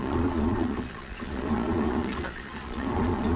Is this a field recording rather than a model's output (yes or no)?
no